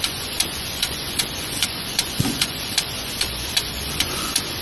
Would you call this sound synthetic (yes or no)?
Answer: yes